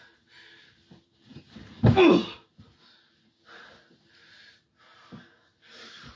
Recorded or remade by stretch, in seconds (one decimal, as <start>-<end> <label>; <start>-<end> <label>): 0.0-6.2 recorded